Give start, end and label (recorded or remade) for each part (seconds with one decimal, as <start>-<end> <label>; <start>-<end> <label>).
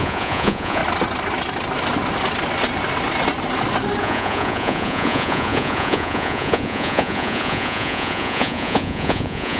0.0-0.8 remade; 0.8-4.0 recorded; 4.0-9.6 remade